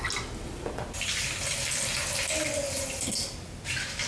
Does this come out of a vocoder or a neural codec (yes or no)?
no